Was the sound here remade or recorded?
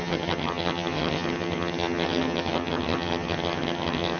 remade